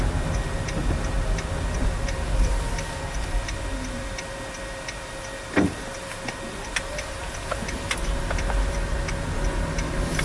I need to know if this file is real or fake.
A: real